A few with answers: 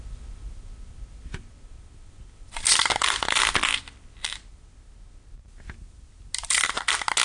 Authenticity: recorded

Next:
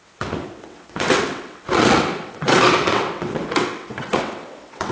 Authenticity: remade